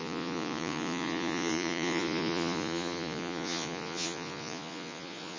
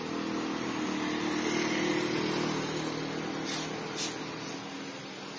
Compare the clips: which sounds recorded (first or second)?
second